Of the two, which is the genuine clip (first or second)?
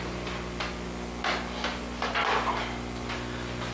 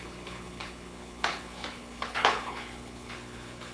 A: first